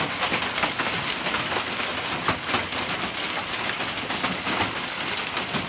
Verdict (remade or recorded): recorded